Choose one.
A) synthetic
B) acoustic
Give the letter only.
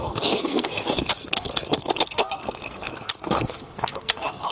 A